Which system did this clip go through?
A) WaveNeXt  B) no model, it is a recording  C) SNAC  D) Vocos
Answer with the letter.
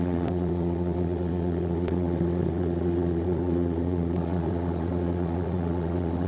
A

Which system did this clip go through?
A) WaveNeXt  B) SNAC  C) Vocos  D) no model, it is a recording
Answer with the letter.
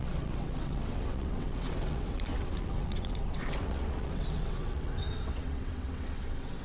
A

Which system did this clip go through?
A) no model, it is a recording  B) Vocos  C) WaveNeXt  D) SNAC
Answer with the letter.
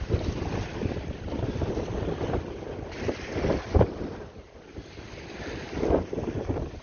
A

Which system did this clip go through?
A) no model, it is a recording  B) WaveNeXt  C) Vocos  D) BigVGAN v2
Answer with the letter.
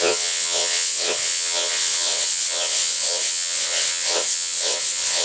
B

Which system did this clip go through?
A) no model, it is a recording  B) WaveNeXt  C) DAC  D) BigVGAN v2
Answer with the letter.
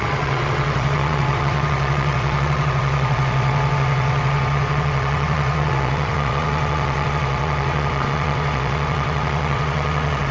B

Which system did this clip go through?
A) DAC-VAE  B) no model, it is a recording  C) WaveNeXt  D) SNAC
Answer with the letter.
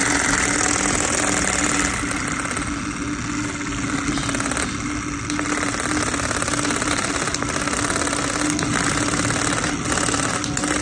B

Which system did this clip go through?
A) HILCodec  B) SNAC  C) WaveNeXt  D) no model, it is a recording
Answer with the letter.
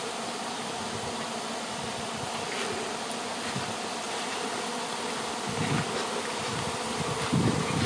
D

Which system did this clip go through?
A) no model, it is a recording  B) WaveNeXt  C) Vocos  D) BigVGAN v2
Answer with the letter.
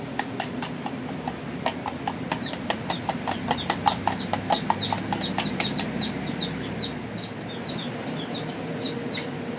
A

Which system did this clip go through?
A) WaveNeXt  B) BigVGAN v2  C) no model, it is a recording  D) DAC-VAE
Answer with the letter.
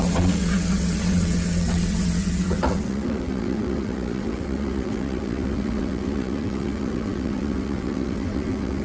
A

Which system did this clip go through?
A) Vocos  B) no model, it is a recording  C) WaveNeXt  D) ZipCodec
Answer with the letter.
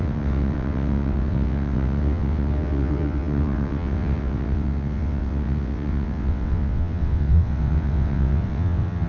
C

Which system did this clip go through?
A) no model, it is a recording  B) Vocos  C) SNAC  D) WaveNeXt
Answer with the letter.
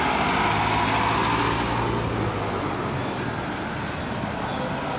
A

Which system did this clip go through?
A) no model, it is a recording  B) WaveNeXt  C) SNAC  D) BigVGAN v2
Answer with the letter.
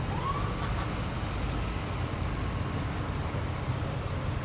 A